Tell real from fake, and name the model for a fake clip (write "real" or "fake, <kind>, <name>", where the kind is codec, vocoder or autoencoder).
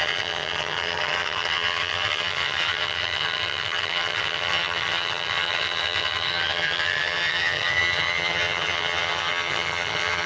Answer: fake, vocoder, HiFi-GAN